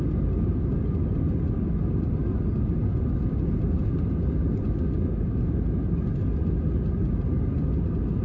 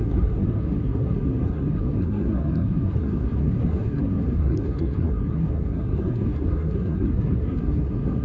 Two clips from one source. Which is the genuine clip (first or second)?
first